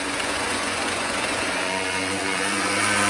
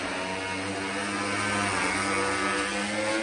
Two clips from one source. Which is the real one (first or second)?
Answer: second